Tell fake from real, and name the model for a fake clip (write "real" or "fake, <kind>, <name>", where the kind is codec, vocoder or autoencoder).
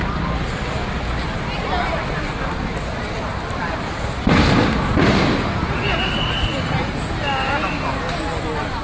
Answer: real